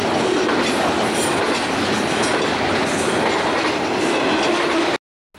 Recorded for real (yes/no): yes